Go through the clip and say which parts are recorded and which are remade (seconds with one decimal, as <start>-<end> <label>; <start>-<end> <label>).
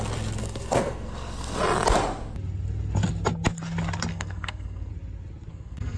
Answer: 0.0-0.4 recorded; 0.4-1.6 remade; 1.6-4.1 recorded; 4.1-4.9 remade; 4.9-5.5 recorded; 5.5-6.0 remade